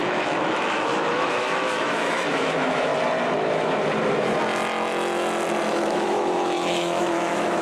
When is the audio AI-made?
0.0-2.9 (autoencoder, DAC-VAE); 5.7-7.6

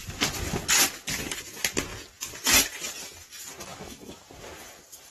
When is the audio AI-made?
3.6-4.3 (autoencoder, DAC-VAE)